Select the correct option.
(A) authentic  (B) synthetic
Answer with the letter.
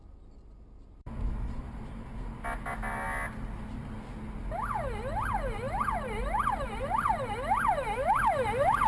A